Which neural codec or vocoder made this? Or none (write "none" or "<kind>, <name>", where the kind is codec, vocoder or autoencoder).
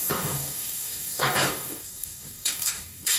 codec, DAC